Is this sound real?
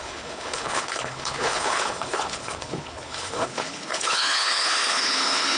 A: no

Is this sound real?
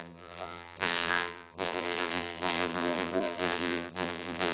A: no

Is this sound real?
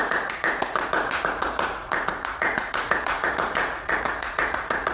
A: no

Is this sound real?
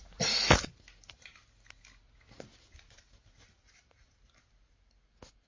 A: yes